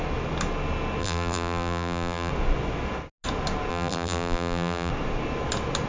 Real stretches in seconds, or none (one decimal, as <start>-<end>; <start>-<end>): 0.0-1.0; 2.3-3.7; 4.9-5.9